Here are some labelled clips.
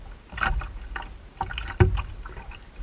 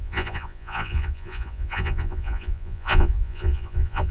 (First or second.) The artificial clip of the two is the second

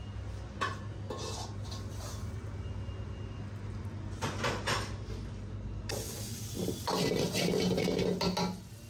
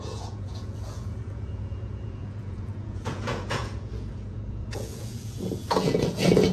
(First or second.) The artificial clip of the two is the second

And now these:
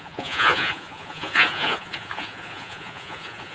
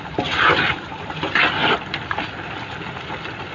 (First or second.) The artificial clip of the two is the first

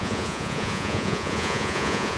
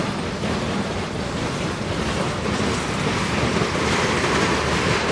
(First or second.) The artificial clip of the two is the first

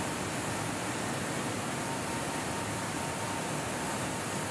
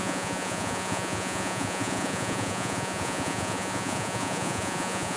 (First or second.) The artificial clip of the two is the second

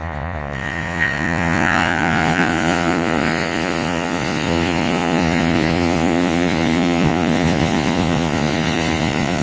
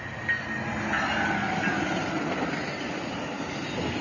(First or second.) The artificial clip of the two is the first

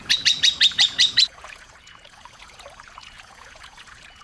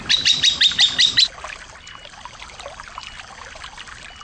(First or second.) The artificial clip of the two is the first